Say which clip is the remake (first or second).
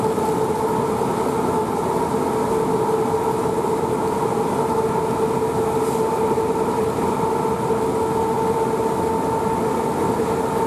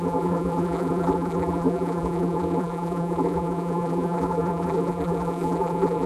second